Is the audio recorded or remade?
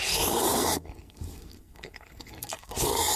remade